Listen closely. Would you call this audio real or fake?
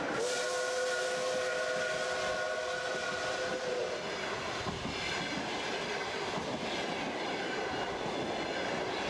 real